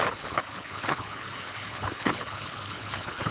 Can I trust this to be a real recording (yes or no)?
no